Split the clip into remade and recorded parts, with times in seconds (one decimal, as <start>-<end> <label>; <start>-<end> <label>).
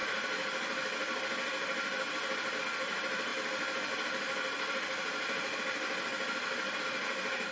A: 0.0-7.5 recorded